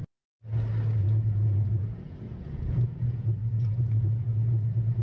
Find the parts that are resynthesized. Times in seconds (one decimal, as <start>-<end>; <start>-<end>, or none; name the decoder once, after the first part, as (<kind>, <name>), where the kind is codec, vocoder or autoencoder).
1.0-5.0 (vocoder, Vocos)